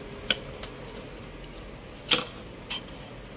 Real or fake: real